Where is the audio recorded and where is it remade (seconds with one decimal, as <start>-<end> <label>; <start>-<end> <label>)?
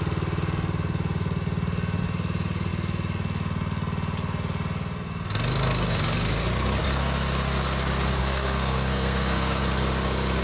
0.0-8.2 recorded; 8.2-9.6 remade; 9.6-10.4 recorded